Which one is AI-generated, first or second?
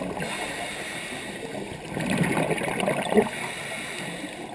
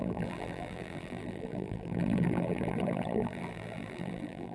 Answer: second